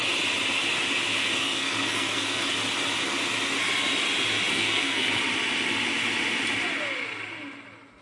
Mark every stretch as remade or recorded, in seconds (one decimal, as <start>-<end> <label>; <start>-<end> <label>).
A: 0.0-1.2 recorded; 1.2-2.5 remade; 2.5-4.5 recorded; 4.5-5.2 remade; 5.2-8.0 recorded